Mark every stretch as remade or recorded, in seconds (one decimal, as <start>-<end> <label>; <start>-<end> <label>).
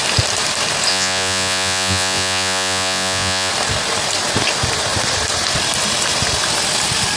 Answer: 0.0-0.9 recorded; 0.9-3.5 remade; 3.5-7.2 recorded